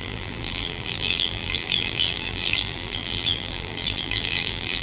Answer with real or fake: fake